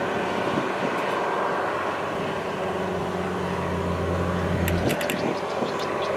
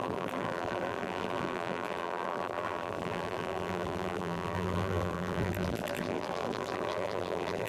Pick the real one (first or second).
first